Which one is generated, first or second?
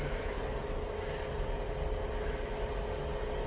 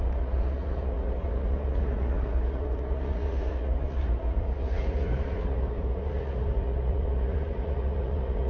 second